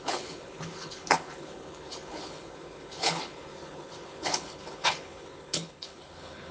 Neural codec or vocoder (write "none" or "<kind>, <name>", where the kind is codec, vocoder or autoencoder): codec, HILCodec